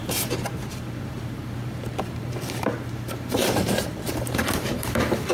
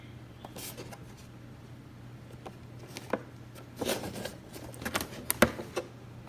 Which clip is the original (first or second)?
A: second